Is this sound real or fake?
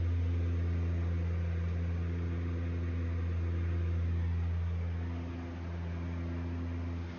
real